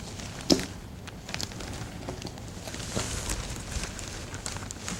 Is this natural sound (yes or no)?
yes